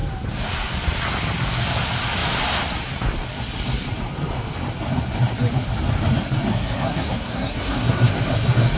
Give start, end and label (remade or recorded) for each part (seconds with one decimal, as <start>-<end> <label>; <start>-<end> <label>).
0.0-6.5 recorded; 6.5-8.1 remade; 8.1-8.8 recorded